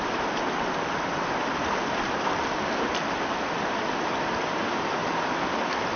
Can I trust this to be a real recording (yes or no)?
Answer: yes